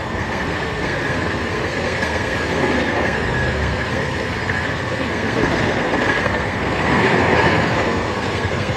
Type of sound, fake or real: fake